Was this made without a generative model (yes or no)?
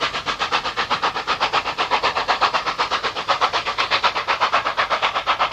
yes